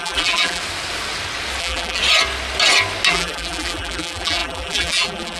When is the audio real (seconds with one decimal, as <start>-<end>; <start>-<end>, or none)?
0.6-1.6; 2.0-3.1